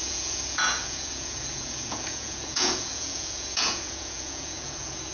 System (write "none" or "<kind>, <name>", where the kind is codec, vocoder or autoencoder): vocoder, Vocos